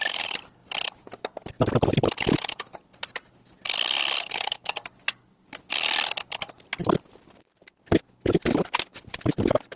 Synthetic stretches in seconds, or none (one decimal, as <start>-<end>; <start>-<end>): 0.0-9.8